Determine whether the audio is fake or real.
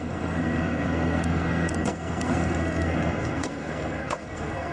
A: fake